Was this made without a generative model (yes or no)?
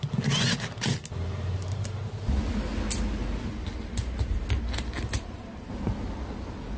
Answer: yes